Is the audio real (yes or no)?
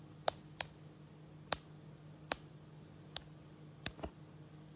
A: yes